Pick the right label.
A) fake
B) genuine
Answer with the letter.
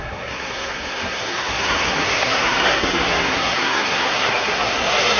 A